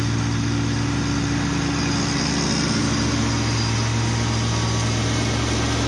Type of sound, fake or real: real